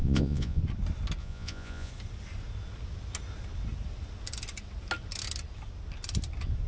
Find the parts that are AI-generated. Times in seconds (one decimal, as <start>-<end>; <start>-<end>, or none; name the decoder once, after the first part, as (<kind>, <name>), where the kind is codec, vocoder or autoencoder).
0.0-0.6 (vocoder, Vocos); 1.2-1.9